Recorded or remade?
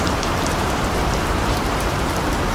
remade